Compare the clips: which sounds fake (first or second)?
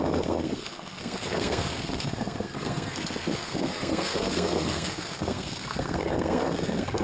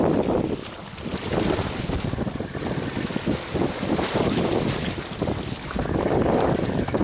first